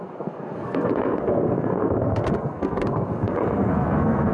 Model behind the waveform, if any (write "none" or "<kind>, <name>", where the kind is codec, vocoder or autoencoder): codec, SNAC